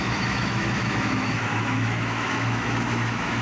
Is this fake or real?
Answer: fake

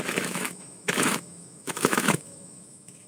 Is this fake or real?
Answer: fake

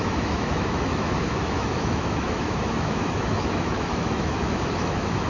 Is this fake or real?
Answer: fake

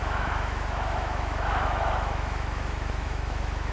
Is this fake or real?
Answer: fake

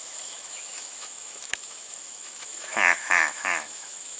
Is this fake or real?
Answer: fake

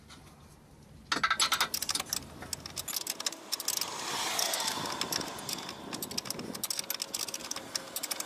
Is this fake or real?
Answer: real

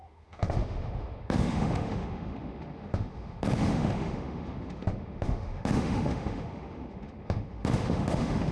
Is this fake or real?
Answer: fake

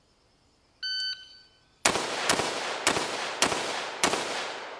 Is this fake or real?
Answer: real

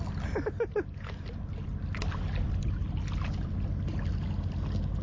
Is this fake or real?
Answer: real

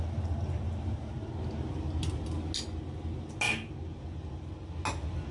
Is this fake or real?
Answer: real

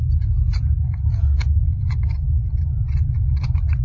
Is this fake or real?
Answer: real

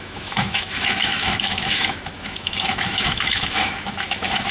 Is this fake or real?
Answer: fake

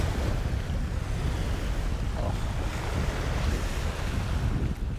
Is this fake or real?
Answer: real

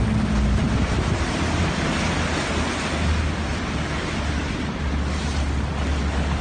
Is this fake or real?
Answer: real